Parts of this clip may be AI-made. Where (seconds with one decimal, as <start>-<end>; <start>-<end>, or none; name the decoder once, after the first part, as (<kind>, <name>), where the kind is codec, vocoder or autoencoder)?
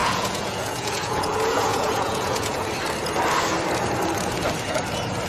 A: 0.0-2.7 (vocoder, Vocos)